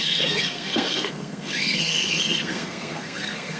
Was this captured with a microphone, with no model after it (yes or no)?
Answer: no